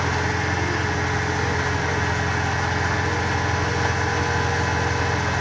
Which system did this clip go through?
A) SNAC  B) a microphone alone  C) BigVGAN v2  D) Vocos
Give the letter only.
B